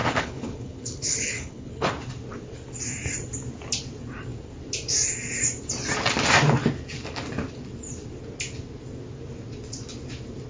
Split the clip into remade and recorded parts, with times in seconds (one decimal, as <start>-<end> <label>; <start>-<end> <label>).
0.0-1.9 remade; 1.9-10.5 recorded

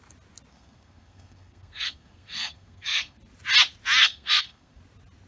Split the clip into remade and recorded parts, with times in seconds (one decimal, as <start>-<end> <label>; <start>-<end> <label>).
0.0-0.5 recorded; 0.5-3.2 remade; 3.2-4.0 recorded; 4.0-4.8 remade; 4.8-5.3 recorded